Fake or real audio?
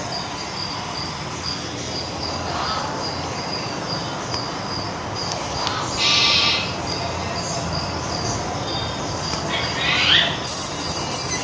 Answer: real